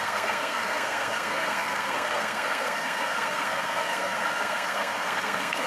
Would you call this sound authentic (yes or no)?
no